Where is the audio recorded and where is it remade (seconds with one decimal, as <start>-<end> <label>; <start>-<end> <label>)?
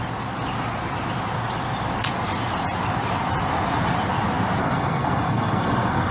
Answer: 0.0-4.6 recorded; 4.6-6.1 remade